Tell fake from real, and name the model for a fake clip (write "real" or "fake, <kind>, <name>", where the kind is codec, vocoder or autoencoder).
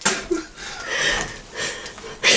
real